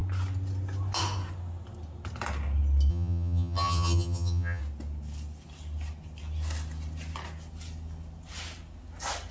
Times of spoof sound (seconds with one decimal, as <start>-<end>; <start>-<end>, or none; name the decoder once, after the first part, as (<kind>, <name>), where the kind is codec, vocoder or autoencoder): 2.9-4.6 (vocoder, HiFi-GAN)